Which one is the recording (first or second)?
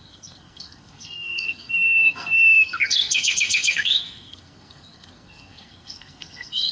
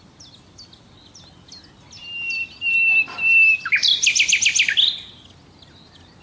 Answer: second